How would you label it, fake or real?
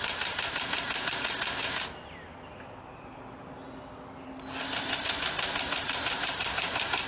real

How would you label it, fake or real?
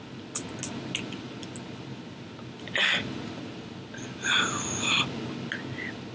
real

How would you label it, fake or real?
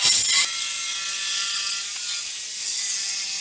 real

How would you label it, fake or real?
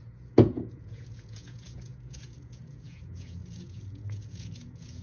fake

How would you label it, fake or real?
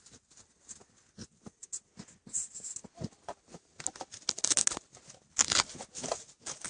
real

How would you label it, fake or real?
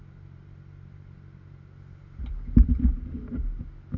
real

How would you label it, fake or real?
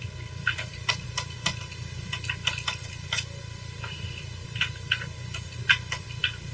real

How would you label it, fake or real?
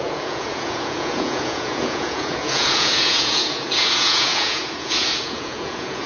fake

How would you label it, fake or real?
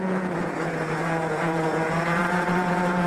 fake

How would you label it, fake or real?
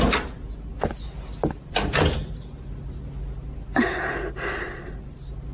real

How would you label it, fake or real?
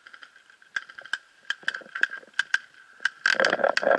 real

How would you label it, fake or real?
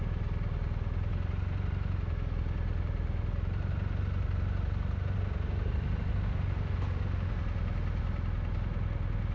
real